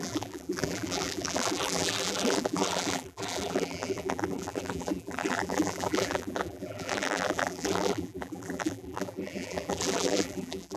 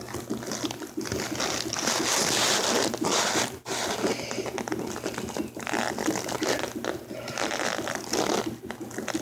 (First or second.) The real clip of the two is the second